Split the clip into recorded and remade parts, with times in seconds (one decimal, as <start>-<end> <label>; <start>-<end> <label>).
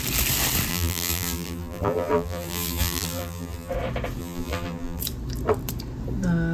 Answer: 0.0-0.7 recorded; 0.7-3.7 remade; 3.7-4.2 recorded; 4.2-5.0 remade; 5.0-6.5 recorded